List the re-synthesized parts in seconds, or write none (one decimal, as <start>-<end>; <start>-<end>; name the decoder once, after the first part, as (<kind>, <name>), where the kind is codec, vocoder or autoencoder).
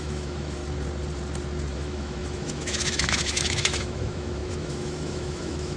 0.0-0.6 (autoencoder, DAC-VAE); 1.7-5.8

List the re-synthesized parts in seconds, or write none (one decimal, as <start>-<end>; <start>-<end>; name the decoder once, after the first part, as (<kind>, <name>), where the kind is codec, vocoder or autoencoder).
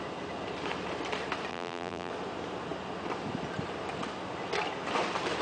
1.5-2.1 (vocoder, BigVGAN v2)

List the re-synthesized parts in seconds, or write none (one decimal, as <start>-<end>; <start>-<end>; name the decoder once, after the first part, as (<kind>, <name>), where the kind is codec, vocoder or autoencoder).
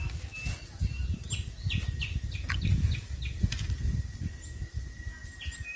none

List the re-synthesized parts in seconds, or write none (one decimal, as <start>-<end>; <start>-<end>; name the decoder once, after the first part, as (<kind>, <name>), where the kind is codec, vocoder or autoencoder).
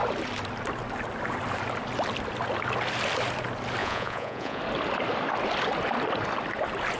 3.8-4.6 (vocoder, Vocos)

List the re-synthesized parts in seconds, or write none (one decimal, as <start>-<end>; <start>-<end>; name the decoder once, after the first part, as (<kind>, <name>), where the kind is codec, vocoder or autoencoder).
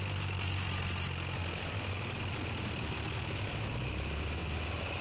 none